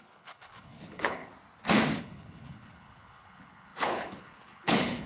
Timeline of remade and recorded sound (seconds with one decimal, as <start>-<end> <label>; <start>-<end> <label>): 0.0-1.3 remade; 1.3-2.0 recorded; 2.0-5.1 remade